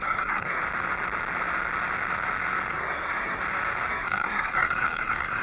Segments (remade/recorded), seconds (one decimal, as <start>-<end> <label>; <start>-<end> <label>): 0.0-0.6 remade; 0.6-2.7 recorded; 2.7-3.4 remade; 3.4-3.9 recorded; 3.9-5.4 remade